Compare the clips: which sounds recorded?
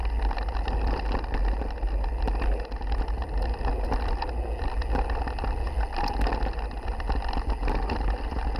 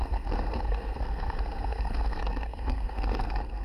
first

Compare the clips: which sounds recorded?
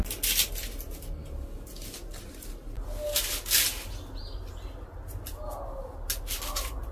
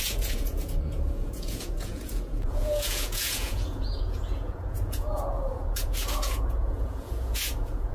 first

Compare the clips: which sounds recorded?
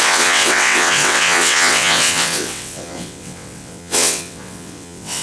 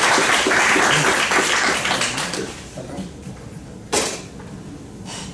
second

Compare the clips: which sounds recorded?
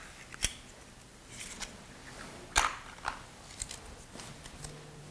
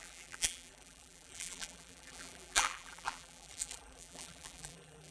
first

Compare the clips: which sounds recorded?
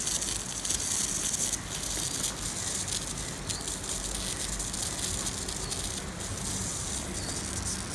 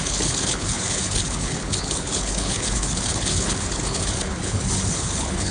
first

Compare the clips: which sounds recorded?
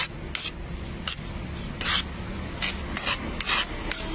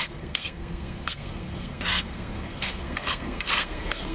first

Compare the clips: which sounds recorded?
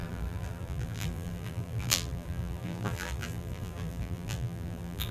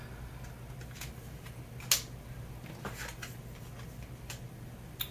second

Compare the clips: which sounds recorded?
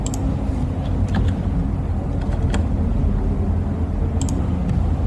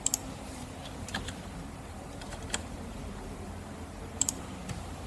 first